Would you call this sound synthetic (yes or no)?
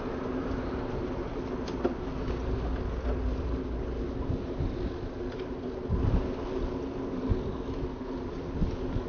no